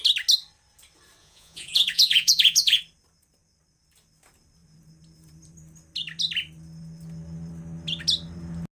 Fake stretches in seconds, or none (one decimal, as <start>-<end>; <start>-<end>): 1.2-2.8